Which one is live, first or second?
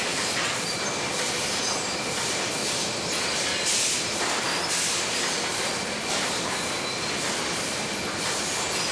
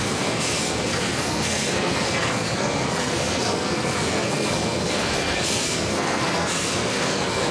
first